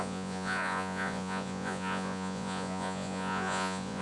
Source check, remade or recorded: remade